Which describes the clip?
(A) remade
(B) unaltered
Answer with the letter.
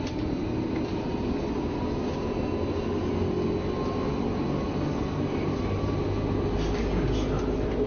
B